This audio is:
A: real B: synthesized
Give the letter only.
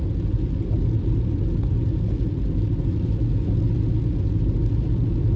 A